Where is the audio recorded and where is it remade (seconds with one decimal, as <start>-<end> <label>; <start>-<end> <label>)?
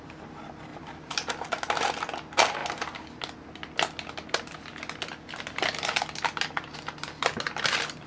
0.0-0.7 recorded; 0.7-1.3 remade; 1.3-8.1 recorded